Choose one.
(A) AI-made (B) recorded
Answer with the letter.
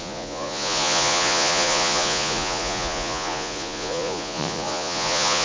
A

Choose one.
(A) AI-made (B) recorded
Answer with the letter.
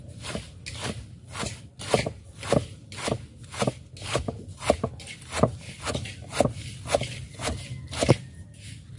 B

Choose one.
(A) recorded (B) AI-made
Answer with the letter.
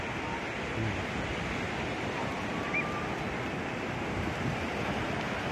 A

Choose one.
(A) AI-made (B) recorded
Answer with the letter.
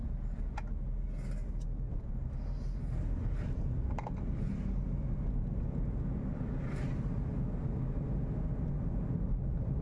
B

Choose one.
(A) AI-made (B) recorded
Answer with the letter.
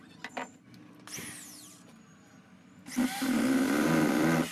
B